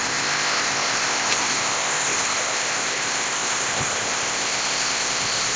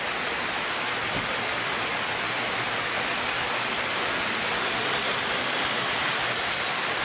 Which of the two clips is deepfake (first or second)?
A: first